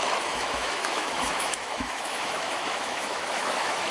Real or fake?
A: fake